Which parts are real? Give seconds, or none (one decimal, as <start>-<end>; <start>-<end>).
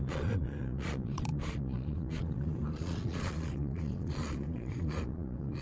none